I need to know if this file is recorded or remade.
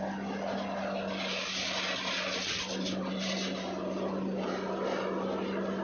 recorded